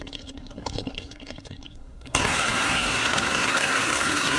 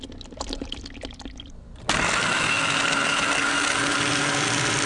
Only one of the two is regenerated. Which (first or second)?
first